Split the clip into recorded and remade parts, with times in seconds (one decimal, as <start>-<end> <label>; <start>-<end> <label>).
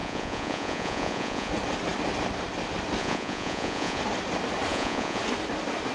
0.0-1.5 remade; 1.5-3.0 recorded; 3.0-4.0 remade; 4.0-4.7 recorded; 4.7-5.2 remade; 5.2-5.9 recorded